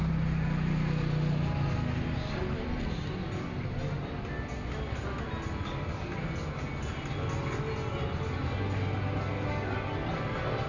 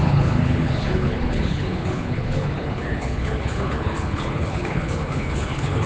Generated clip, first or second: second